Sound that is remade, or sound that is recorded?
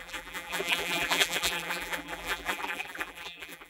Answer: remade